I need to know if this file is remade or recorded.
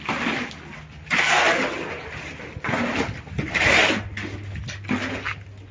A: recorded